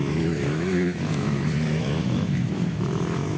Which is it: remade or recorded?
remade